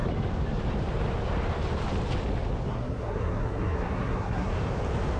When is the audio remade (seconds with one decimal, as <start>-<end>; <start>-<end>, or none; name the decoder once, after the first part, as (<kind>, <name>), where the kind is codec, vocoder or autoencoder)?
2.7-4.5 (codec, SNAC)